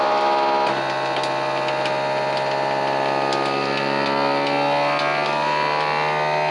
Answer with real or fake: real